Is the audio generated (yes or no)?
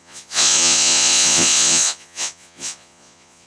yes